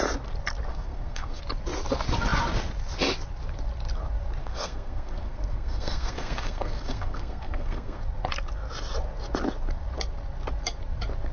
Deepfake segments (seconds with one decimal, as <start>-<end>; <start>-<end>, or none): 0.7-1.4; 4.4-8.0